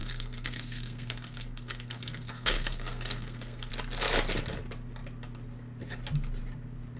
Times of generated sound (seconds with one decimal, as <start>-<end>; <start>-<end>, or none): 0.0-3.7